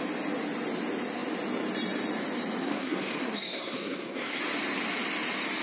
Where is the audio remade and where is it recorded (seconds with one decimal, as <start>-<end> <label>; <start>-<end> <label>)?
0.0-2.6 recorded; 2.6-4.4 remade; 4.4-5.6 recorded